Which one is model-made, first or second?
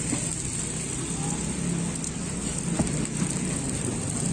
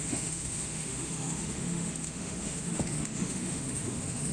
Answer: second